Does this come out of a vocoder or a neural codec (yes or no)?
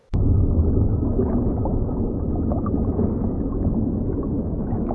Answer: yes